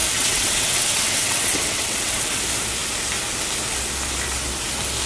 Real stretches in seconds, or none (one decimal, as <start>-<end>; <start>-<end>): 2.4-5.1